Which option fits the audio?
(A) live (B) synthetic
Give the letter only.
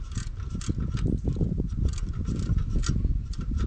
A